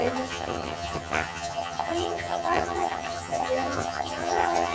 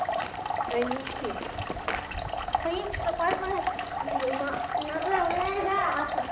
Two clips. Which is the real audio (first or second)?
second